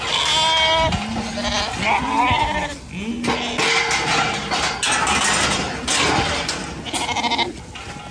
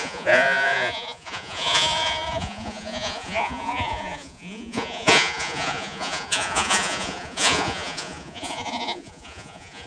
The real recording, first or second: first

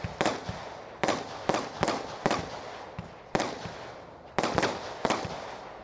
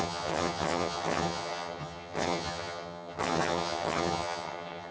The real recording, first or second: first